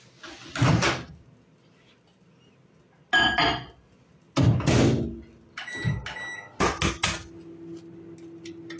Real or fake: real